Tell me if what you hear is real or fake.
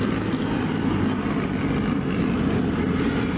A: real